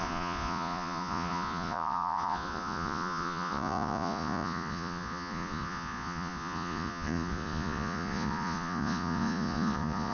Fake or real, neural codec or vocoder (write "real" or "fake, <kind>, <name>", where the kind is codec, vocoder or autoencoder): fake, vocoder, Vocos